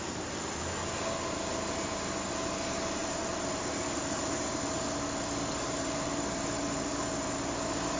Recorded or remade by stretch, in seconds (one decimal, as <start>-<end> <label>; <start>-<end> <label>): 0.0-0.8 remade; 0.8-1.6 recorded; 1.6-8.0 remade